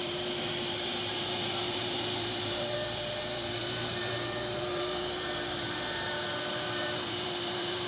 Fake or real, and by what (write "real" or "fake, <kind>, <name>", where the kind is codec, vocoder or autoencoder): fake, vocoder, BigVGAN v2